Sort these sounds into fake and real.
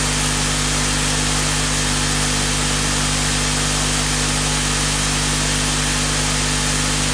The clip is real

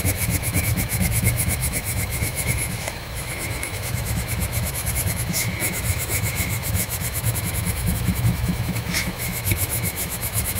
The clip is fake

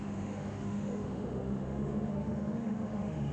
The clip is fake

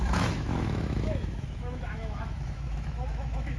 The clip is fake